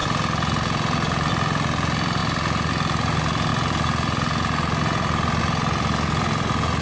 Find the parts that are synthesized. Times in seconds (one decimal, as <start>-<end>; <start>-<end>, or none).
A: none